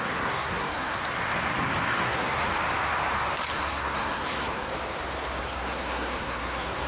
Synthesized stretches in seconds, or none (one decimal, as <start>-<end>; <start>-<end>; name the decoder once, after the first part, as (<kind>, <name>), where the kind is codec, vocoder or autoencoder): 0.0-1.0 (codec, SNAC); 2.0-2.5; 3.5-4.7; 5.4-6.9